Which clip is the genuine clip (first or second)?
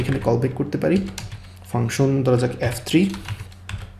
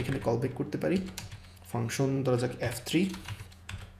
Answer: first